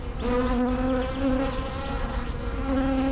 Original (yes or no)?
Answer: yes